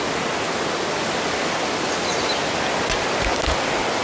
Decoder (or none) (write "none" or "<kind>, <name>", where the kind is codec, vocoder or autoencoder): none